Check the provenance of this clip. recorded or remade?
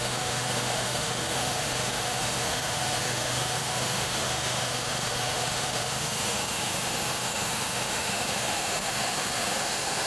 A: remade